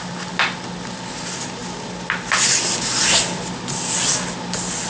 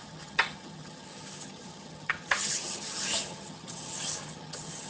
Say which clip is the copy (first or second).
second